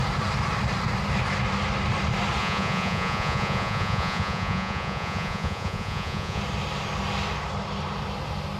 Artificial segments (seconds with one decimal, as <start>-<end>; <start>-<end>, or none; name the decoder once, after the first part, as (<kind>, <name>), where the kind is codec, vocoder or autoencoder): 2.4-6.4 (vocoder, Vocos)